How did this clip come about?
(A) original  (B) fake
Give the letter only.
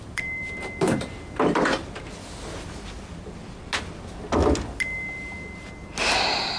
A